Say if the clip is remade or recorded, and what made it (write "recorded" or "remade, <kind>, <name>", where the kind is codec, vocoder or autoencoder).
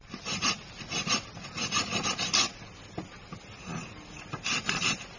remade, vocoder, BigVGAN v2